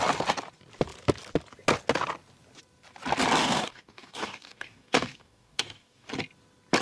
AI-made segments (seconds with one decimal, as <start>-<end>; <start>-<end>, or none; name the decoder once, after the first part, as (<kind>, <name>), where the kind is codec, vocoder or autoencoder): 3.4-6.1 (codec, DAC)